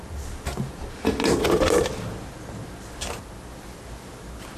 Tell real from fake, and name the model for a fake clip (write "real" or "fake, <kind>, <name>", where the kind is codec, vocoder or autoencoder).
real